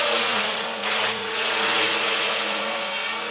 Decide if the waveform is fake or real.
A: fake